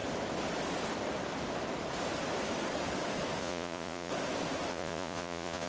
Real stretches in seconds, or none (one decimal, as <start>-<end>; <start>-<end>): 0.0-3.4; 4.1-4.7